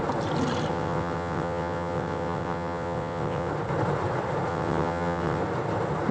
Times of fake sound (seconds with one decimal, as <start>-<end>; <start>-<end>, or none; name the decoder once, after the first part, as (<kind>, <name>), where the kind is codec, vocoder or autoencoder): 0.7-3.5 (vocoder, WaveNeXt); 4.5-5.4